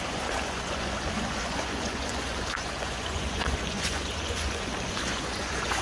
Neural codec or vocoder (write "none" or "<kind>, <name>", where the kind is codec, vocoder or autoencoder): vocoder, Vocos